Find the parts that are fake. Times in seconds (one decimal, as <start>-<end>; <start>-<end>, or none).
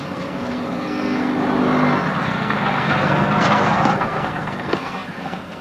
0.0-1.3; 2.2-5.6